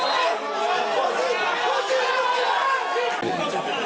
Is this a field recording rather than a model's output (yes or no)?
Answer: yes